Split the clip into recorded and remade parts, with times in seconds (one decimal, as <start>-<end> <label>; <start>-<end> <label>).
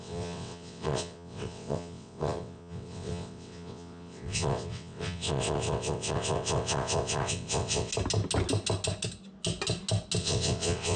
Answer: 0.0-7.9 remade; 7.9-10.2 recorded; 10.2-11.0 remade